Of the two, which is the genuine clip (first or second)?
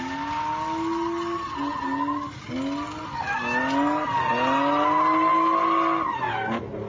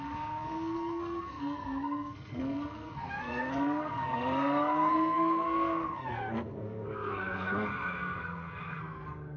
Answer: first